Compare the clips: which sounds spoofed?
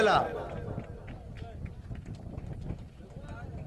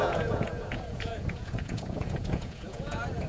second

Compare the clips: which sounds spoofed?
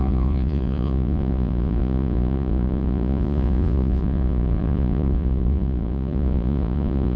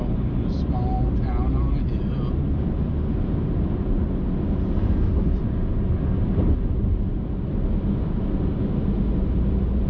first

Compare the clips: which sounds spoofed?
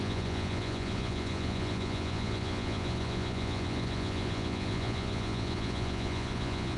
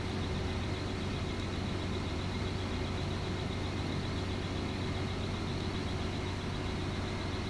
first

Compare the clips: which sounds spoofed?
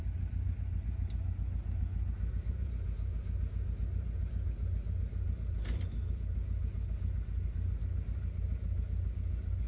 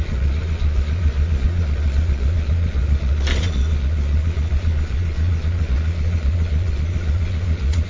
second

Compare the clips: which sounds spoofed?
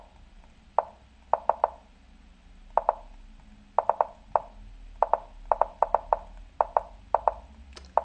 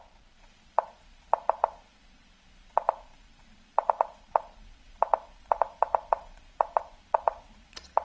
second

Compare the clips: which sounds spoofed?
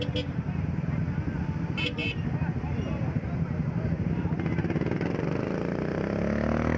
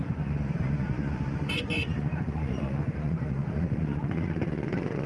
second